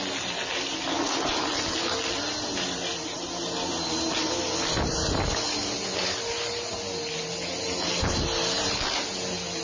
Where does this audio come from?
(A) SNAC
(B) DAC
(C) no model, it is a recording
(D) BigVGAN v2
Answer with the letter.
C